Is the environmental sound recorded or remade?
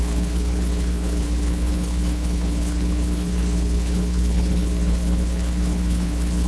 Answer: remade